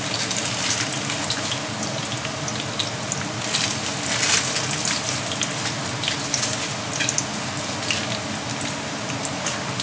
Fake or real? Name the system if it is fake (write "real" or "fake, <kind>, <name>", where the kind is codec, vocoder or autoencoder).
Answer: real